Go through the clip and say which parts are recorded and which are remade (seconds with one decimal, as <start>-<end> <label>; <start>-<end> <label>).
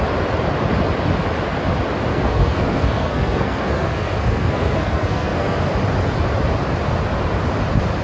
0.0-2.1 recorded; 2.1-5.6 remade; 5.6-8.0 recorded